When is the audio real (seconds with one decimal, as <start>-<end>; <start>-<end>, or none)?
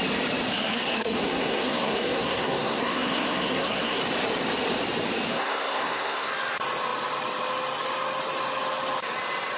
0.0-0.5; 4.0-5.3; 6.3-9.6